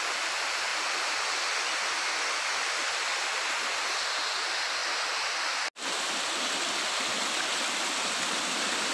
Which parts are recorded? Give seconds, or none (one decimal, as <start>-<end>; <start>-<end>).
0.0-8.9